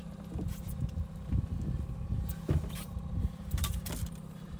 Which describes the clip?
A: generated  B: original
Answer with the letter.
A